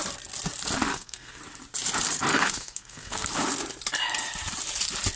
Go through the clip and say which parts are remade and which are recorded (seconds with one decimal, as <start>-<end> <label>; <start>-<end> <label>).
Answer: 0.0-0.9 recorded; 0.9-1.4 remade; 1.4-2.3 recorded; 2.3-3.3 remade; 3.3-5.2 recorded